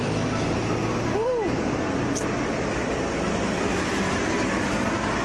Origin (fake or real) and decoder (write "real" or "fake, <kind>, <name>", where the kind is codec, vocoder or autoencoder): real